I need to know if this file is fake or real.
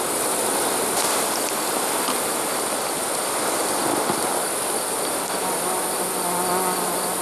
real